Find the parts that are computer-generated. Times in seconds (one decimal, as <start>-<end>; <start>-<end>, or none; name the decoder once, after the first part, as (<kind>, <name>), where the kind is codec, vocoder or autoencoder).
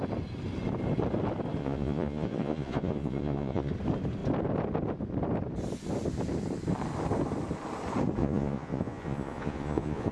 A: 1.6-3.7 (vocoder, Vocos); 8.2-10.1